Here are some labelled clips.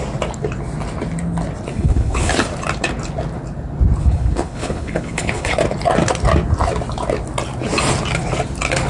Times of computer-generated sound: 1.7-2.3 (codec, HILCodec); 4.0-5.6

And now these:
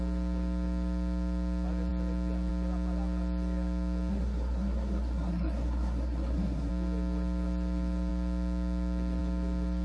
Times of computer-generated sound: 4.1-6.7 (codec, SNAC)

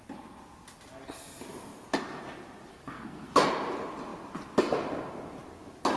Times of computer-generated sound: 2.7-3.3 (codec, SNAC)

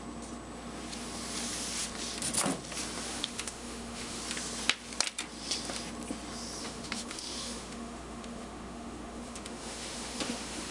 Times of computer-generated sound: 3.1-4.2 (autoencoder, DAC-VAE); 6.6-10.7